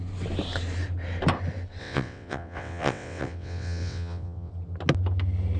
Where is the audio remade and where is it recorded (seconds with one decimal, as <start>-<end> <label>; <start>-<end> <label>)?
0.0-1.8 recorded; 1.8-4.5 remade; 4.5-5.6 recorded